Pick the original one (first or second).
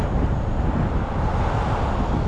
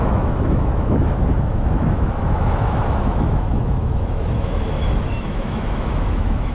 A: first